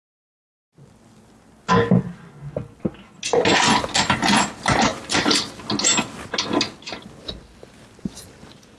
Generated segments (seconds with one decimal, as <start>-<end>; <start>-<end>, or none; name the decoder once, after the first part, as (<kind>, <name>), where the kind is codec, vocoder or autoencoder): none